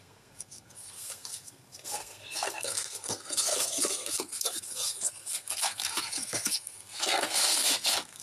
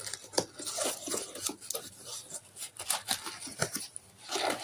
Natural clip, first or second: second